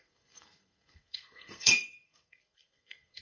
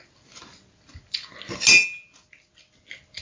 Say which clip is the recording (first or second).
second